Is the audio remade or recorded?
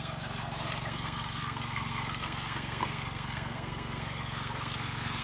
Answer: remade